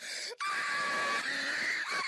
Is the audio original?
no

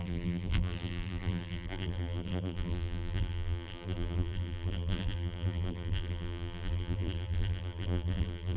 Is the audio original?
no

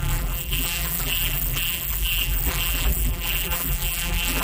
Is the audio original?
no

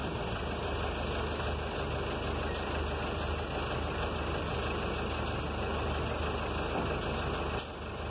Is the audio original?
yes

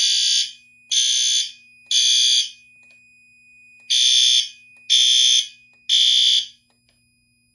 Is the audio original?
yes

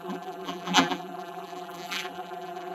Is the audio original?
no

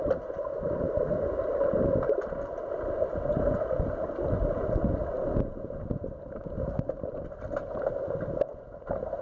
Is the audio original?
yes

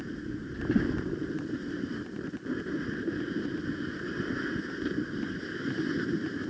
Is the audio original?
yes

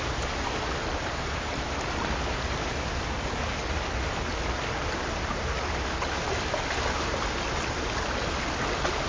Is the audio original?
yes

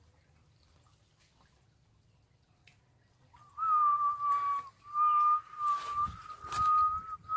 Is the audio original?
yes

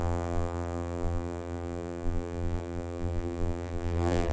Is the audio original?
no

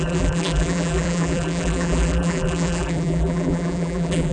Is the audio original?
no